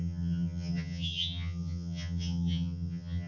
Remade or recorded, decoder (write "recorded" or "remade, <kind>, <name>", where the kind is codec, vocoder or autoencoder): remade, vocoder, HiFi-GAN